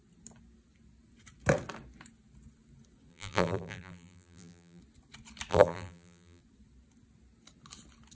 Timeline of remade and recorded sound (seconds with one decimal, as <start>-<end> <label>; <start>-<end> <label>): 0.0-3.1 recorded; 3.1-4.8 remade; 4.8-5.5 recorded; 5.5-6.4 remade; 6.4-8.1 recorded